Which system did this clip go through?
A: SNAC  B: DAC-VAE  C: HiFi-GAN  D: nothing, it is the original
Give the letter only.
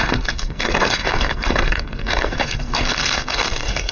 A